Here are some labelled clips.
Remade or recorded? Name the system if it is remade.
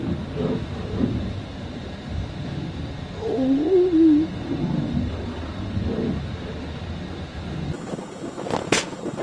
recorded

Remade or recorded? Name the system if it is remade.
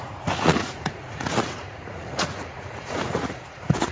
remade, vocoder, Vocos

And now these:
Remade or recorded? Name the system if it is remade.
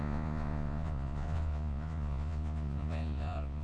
remade, vocoder, Vocos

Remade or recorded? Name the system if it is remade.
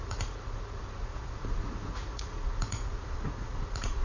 remade, vocoder, Vocos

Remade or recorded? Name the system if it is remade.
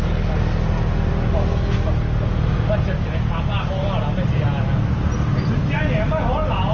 recorded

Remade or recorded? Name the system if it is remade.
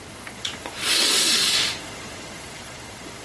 remade, vocoder, Vocos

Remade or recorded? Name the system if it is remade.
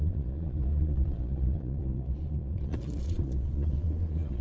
remade, vocoder, Vocos